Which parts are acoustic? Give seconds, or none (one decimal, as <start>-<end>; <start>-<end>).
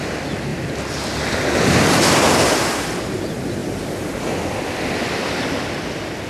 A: 0.0-0.5; 1.7-6.3